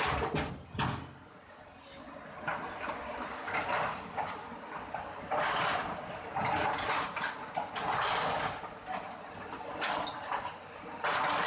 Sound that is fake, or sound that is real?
real